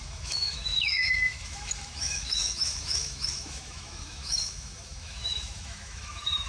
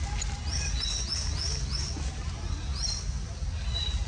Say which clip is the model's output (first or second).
first